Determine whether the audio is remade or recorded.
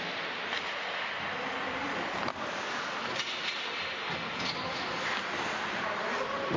recorded